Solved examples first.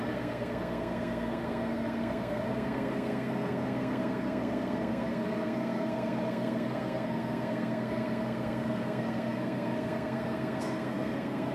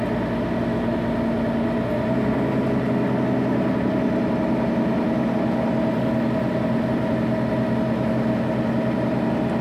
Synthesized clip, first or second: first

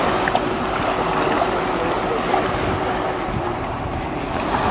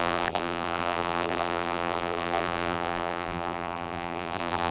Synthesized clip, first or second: second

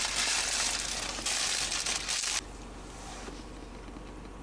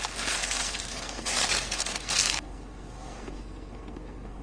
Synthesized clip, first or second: second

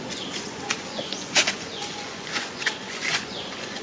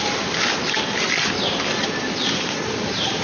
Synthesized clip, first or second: first